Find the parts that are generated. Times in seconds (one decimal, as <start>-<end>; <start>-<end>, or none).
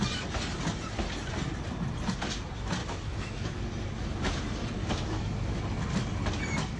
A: 2.8-3.6; 4.8-5.6